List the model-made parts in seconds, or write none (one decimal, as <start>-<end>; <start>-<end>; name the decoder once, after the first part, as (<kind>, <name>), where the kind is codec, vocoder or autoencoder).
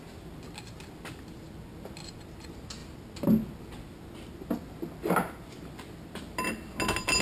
none